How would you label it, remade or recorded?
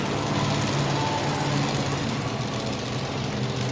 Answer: recorded